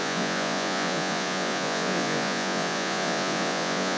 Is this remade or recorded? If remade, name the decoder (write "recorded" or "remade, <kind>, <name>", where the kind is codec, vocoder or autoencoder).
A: remade, vocoder, Vocos